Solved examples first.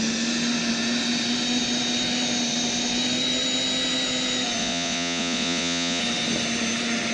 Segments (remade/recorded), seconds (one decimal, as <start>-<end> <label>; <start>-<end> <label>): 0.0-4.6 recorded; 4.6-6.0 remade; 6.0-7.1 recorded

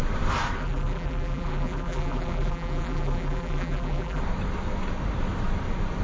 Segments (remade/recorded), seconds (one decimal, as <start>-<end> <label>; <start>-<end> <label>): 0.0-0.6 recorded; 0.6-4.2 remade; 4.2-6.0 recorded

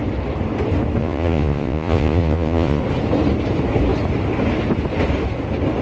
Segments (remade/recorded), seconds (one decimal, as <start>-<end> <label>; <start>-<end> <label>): 0.0-1.0 recorded; 1.0-2.8 remade; 2.8-5.8 recorded

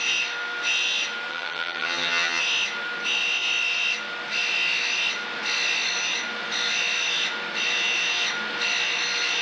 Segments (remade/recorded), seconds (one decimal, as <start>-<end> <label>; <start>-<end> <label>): 0.0-1.3 recorded; 1.3-2.4 remade; 2.4-9.4 recorded